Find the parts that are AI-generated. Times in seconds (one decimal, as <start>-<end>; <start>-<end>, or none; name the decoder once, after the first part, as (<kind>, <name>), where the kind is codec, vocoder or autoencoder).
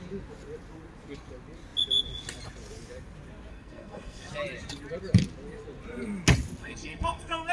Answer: 3.5-4.3 (codec, SNAC); 6.6-7.5